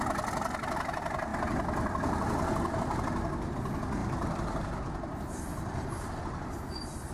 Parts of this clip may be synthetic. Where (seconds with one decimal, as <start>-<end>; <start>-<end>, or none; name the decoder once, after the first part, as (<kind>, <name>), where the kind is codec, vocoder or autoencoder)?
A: 4.0-4.8 (vocoder, BigVGAN v2); 5.5-6.2